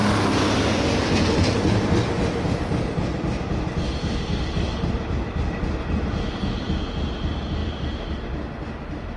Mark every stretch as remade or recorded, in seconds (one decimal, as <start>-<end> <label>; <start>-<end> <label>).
0.0-9.2 recorded